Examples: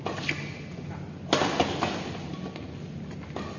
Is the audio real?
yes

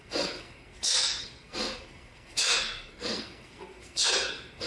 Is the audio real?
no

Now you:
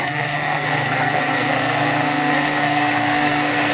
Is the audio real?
no